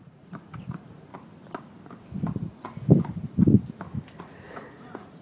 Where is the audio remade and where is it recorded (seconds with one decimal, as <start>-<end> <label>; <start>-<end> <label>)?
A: 0.0-1.1 remade; 1.1-4.2 recorded; 4.2-5.2 remade